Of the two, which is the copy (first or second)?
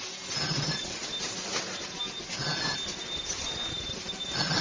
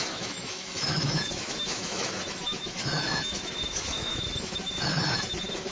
second